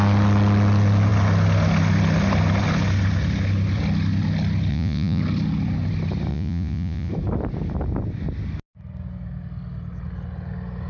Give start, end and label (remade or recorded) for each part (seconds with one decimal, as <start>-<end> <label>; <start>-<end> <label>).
0.0-4.7 recorded; 4.7-5.2 remade; 5.2-6.3 recorded; 6.3-7.1 remade; 7.1-10.9 recorded